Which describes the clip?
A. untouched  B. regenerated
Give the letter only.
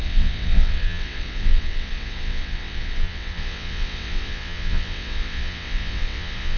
B